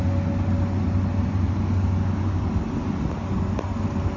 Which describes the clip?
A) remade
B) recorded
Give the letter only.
B